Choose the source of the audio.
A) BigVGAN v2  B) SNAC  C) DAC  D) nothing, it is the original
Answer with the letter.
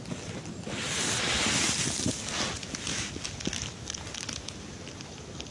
D